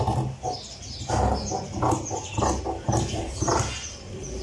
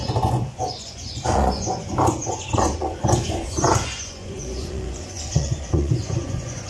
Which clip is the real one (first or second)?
first